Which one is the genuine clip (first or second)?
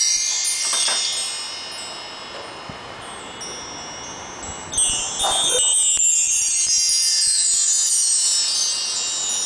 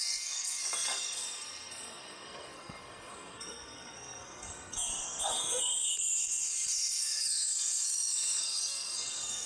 first